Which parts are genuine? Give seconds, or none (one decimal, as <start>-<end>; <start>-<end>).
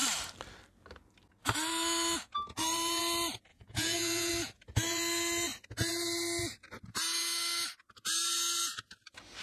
0.0-3.5; 4.3-9.4